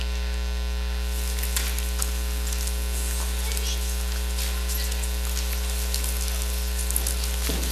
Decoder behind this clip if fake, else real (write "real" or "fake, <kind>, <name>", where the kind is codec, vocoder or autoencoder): real